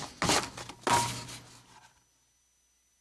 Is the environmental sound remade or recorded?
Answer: recorded